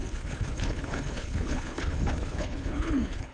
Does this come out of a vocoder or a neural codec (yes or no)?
yes